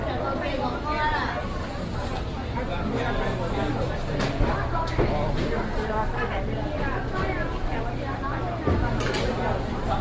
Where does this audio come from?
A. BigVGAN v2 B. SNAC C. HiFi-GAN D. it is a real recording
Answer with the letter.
D